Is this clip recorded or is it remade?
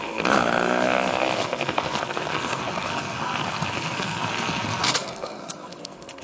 remade